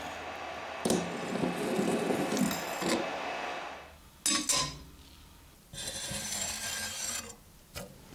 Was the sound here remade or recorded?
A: recorded